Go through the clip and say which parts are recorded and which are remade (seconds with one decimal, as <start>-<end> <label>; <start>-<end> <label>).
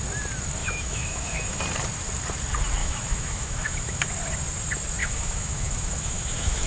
0.0-0.6 recorded; 0.6-1.6 remade; 1.6-2.8 recorded; 2.8-4.1 remade; 4.1-5.0 recorded; 5.0-6.7 remade